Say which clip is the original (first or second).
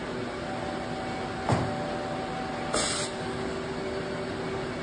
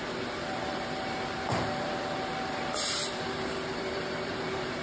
first